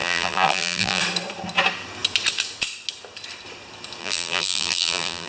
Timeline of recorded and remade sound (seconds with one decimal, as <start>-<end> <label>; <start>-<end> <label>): 0.0-1.0 remade; 1.0-4.0 recorded; 4.0-5.3 remade